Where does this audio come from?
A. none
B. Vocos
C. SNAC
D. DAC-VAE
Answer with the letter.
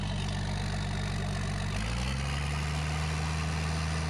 A